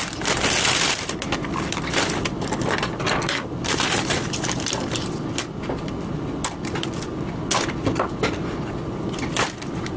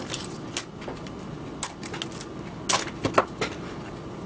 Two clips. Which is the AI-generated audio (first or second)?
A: first